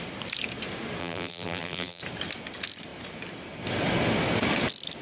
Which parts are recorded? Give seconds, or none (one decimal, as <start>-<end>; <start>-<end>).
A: 0.0-1.0; 2.0-5.0